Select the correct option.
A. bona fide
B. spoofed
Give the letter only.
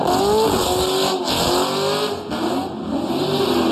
A